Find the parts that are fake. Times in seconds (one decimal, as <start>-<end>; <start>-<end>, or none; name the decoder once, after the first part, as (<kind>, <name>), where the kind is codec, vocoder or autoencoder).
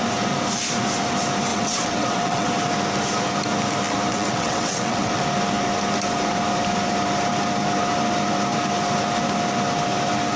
1.5-2.5 (vocoder, WaveNeXt); 4.1-5.2